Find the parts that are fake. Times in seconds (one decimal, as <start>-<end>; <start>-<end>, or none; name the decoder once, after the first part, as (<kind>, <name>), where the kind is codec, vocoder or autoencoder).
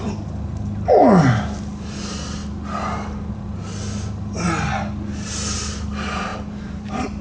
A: none